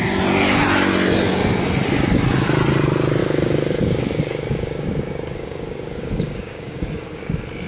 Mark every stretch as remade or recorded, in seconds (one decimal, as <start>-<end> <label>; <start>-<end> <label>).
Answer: 0.0-3.2 recorded; 3.2-7.3 remade; 7.3-7.7 recorded